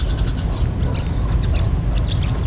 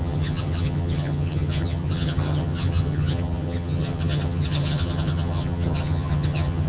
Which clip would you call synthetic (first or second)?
second